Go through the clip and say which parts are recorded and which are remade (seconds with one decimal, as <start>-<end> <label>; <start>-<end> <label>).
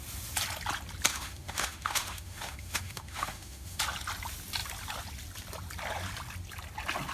0.0-1.1 recorded; 1.1-3.8 remade; 3.8-7.1 recorded